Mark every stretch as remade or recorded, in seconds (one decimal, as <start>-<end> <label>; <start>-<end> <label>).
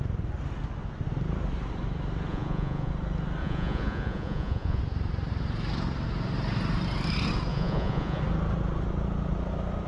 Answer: 0.0-2.3 recorded; 2.3-2.9 remade; 2.9-3.4 recorded; 3.4-4.8 remade; 4.8-7.5 recorded; 7.5-8.2 remade; 8.2-9.9 recorded